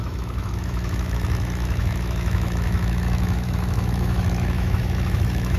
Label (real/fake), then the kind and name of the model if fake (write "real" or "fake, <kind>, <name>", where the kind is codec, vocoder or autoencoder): fake, autoencoder, DAC-VAE